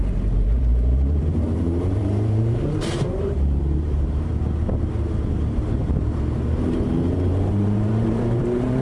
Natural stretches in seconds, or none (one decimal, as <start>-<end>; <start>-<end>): 4.3-5.3